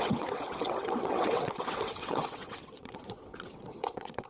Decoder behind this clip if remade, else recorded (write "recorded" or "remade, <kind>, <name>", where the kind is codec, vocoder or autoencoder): remade, vocoder, WaveNeXt